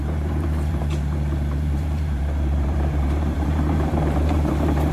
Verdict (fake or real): fake